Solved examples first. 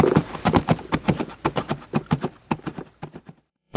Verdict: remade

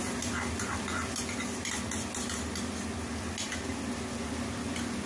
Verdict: recorded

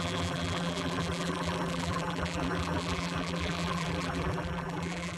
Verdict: remade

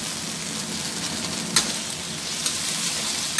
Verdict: recorded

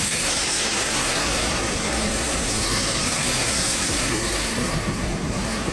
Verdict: remade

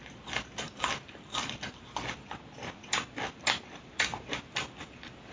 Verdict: recorded